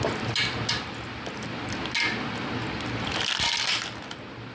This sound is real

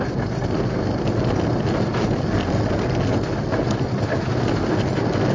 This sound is real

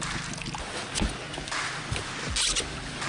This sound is real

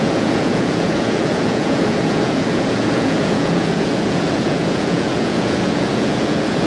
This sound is fake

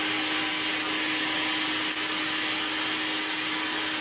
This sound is real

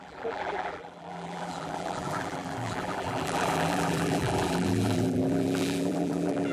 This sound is fake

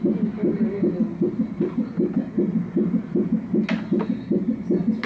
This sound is real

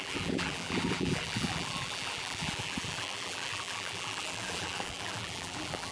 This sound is fake